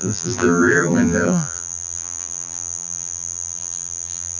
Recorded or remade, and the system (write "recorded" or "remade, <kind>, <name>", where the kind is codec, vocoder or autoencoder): remade, vocoder, BigVGAN v2